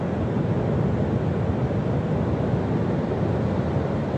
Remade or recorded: recorded